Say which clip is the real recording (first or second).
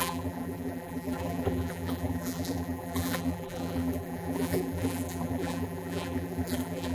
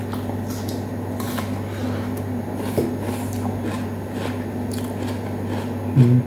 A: second